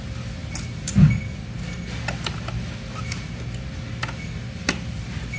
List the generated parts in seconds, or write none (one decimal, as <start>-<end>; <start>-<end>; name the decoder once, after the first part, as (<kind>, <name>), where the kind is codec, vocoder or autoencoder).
none